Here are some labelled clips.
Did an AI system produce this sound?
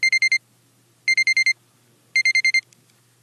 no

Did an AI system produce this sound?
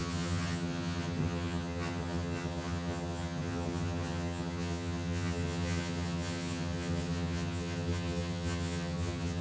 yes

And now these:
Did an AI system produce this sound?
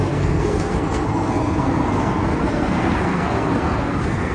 yes